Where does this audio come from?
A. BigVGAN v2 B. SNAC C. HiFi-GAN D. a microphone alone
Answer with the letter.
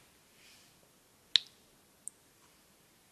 D